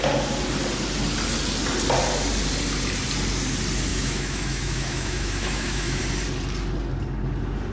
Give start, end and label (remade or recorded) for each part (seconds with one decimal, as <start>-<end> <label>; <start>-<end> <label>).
0.0-3.9 recorded; 3.9-6.0 remade; 6.0-7.7 recorded